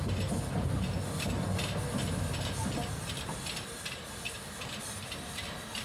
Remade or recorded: recorded